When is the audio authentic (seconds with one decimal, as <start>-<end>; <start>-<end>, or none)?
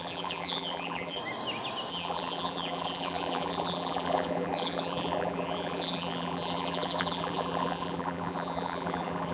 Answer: 1.2-1.9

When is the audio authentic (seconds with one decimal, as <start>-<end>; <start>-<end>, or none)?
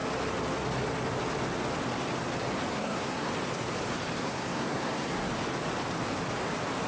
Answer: 0.0-2.7; 3.3-4.2; 5.3-6.9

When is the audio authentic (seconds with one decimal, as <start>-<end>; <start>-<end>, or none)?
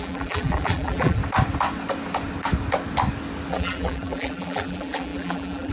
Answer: 1.2-3.5